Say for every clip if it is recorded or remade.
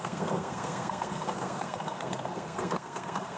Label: remade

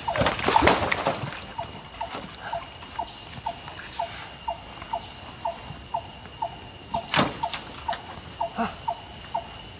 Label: recorded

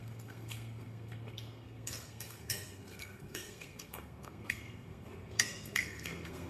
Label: remade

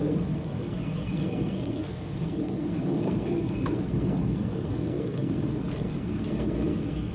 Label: remade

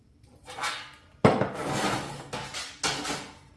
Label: recorded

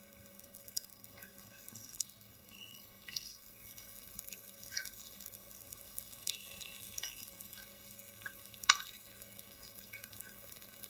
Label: remade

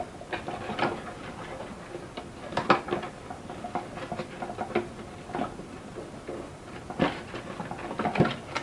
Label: recorded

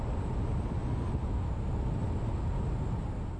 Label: recorded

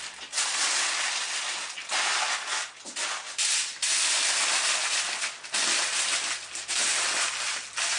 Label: recorded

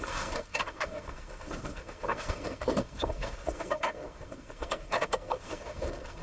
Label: remade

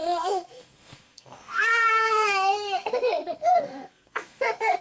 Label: remade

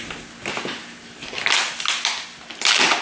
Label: recorded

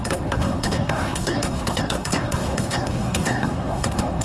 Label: remade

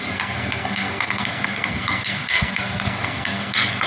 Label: remade